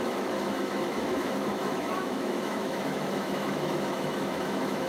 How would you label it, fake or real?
fake